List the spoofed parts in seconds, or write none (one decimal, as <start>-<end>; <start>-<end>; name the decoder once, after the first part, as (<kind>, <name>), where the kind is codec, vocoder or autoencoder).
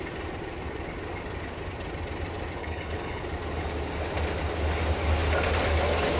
2.6-3.2 (codec, HILCodec)